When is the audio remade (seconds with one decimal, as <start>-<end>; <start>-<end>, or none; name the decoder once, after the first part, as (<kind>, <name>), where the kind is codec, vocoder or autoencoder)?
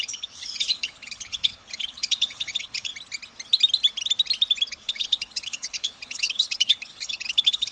0.0-2.9 (codec, HILCodec); 4.7-7.7